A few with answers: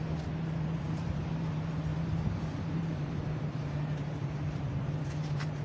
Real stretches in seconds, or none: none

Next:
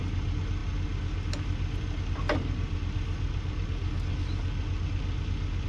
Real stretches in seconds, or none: 0.0-5.7